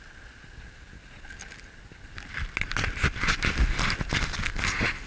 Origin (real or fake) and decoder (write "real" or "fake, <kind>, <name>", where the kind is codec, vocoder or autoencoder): real